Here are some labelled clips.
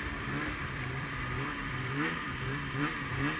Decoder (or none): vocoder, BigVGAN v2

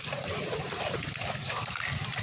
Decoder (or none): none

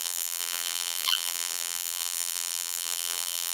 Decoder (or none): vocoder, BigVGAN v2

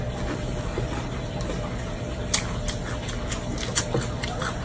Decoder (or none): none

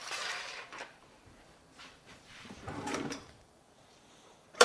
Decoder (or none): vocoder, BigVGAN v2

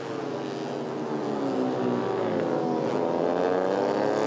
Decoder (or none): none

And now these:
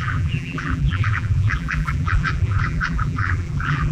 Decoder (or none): vocoder, BigVGAN v2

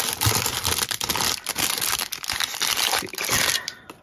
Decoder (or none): none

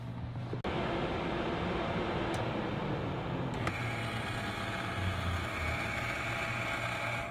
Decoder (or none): none